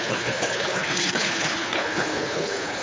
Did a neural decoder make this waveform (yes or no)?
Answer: yes